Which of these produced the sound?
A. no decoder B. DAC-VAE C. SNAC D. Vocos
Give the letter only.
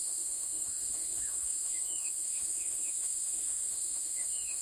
B